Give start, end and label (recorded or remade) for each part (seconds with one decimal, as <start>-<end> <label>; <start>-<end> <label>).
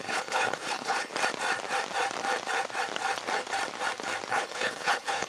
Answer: 0.0-1.1 remade; 1.1-4.3 recorded; 4.3-5.3 remade